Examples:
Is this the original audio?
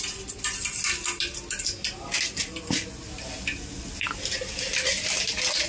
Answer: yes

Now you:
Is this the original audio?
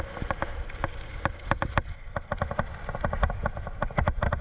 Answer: yes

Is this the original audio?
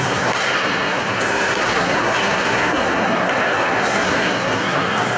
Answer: no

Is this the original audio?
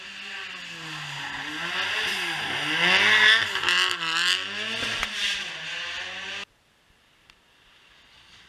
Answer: yes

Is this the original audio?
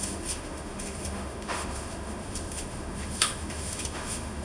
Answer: no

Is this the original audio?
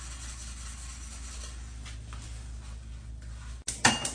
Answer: yes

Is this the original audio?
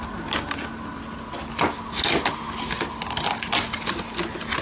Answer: yes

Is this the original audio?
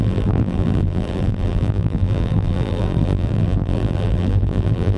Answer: no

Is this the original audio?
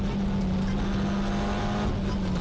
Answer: yes